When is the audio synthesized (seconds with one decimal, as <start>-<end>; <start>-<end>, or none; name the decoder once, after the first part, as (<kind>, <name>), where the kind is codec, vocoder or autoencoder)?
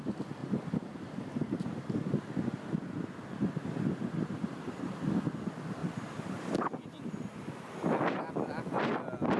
5.8-8.3 (vocoder, BigVGAN v2)